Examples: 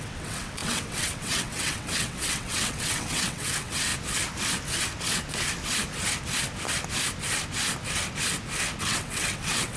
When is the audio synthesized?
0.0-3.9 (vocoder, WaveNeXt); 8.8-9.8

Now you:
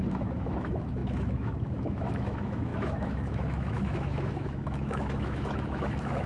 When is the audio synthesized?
0.0-6.3 (autoencoder, DAC-VAE)

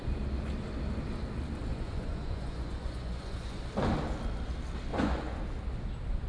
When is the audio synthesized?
1.7-3.6 (vocoder, Vocos); 4.9-5.4

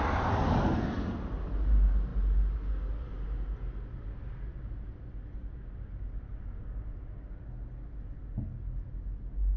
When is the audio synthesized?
none

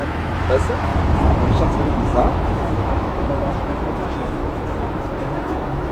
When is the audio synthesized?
0.0-0.9 (autoencoder, DAC-VAE); 1.4-4.4; 5.2-5.9

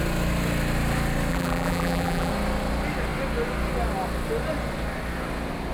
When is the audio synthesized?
1.3-2.3 (vocoder, BigVGAN v2)

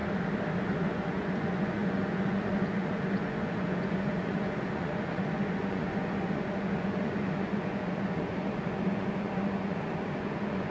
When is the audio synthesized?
0.6-10.7 (vocoder, Vocos)

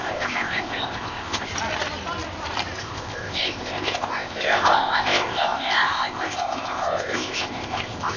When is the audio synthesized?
0.0-1.5 (codec, ZipCodec); 2.8-8.2